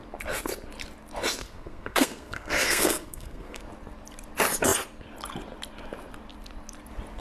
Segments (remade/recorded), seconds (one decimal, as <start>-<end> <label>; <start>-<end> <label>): 0.0-1.4 recorded; 1.4-3.6 remade; 3.6-7.2 recorded